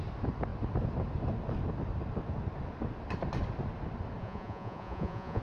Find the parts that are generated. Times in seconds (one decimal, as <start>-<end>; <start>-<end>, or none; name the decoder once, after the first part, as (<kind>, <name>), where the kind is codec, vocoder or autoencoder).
4.2-5.4 (vocoder, Vocos)